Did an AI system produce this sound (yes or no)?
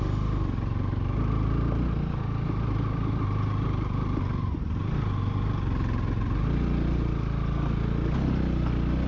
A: no